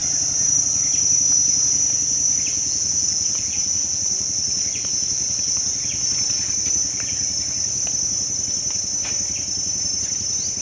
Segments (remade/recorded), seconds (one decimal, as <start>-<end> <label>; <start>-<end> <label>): 0.0-2.5 recorded; 2.5-4.0 remade; 4.0-10.6 recorded